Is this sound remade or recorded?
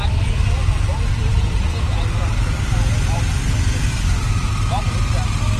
recorded